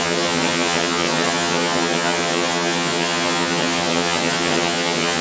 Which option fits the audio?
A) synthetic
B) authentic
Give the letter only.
A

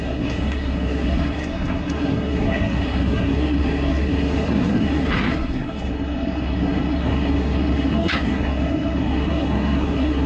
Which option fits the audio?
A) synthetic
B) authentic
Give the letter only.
A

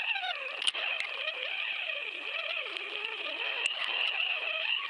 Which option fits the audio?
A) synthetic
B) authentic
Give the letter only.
B